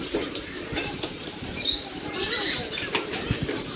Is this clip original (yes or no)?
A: no